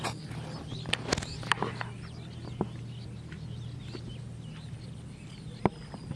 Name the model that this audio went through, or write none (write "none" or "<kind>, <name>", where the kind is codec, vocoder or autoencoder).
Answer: none